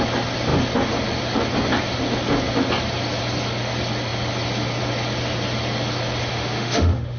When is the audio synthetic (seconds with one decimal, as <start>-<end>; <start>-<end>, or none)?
6.3-7.2